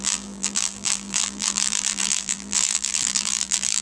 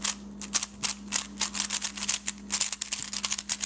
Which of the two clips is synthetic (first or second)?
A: first